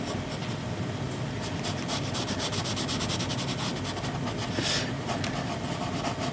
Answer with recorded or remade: recorded